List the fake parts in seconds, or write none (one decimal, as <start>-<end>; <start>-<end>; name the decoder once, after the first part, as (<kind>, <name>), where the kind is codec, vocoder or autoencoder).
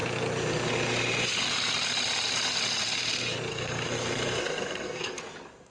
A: 3.5-5.2 (codec, SNAC)